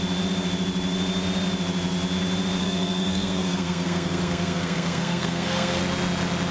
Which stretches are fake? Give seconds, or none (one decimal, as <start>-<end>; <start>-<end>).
2.6-5.8